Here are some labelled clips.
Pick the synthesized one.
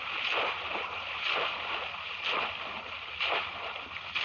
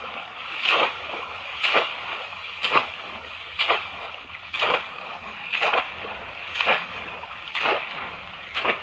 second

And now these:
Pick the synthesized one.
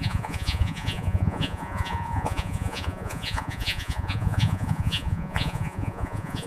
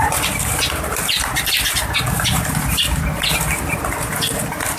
first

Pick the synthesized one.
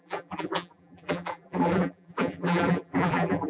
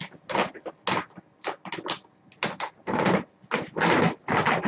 first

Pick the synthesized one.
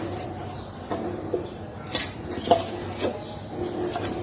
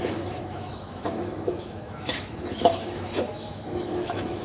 second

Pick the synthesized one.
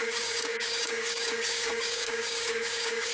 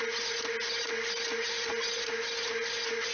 first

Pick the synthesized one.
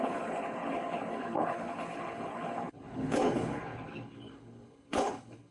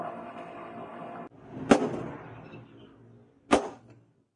first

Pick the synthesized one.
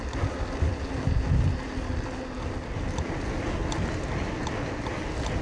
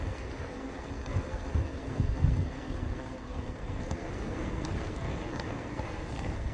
second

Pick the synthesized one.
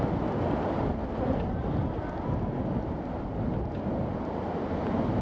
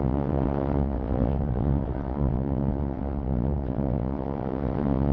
second